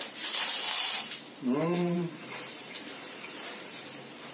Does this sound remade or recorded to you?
remade